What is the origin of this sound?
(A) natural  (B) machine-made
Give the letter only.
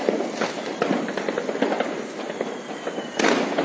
A